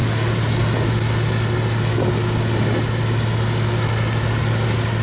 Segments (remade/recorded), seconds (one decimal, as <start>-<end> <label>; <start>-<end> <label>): 0.0-5.0 recorded